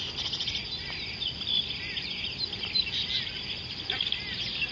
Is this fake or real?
real